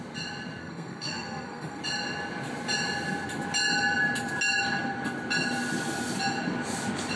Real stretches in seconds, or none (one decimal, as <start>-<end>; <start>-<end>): 0.0-0.6; 1.8-7.2